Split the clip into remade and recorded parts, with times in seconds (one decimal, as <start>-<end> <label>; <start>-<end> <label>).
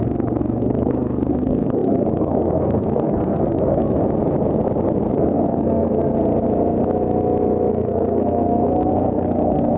0.0-4.0 remade; 4.0-5.1 recorded; 5.1-6.1 remade; 6.1-7.7 recorded; 7.7-9.8 remade